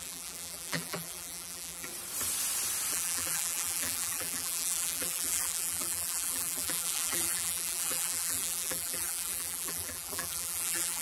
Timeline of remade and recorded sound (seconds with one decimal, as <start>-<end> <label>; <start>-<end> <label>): 0.0-1.9 remade; 1.9-2.9 recorded; 2.9-11.0 remade

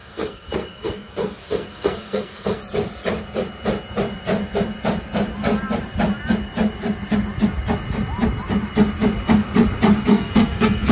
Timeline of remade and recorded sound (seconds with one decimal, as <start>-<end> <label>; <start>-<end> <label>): 0.0-2.6 remade; 2.6-10.1 recorded; 10.1-10.9 remade